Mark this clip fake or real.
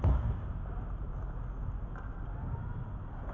real